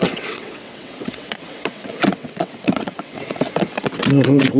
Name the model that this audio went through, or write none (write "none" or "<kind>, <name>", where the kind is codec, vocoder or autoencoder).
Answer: vocoder, WaveNeXt